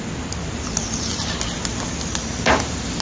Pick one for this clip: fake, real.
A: real